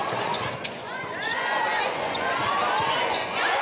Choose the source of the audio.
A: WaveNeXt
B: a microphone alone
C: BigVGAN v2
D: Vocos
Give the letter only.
D